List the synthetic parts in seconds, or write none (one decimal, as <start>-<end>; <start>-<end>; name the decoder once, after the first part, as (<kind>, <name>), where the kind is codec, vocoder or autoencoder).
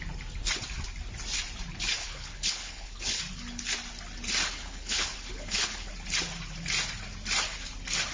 2.0-3.2 (codec, HILCodec); 4.4-5.9